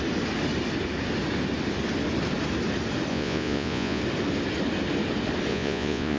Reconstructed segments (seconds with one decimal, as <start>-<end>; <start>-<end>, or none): 3.1-4.0; 5.5-6.2